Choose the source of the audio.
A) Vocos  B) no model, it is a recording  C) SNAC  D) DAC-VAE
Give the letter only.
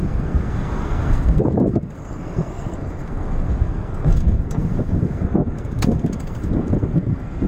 C